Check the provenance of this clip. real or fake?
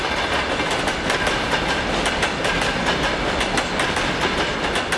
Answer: real